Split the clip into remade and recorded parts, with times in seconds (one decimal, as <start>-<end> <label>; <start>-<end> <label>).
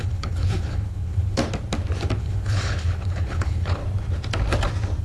0.0-1.4 remade; 1.4-2.2 recorded; 2.2-3.8 remade; 3.8-5.0 recorded